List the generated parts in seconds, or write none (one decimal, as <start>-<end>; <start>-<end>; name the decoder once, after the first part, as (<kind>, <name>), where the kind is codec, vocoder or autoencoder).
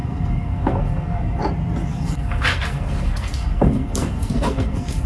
0.0-1.4 (codec, SNAC); 1.9-5.1